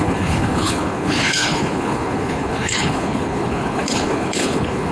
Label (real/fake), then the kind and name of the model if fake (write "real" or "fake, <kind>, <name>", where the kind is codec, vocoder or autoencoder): fake, codec, HILCodec